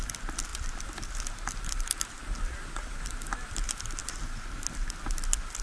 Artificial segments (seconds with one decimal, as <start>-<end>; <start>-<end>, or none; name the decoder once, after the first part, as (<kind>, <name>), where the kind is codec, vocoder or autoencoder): 0.5-3.1 (vocoder, BigVGAN v2)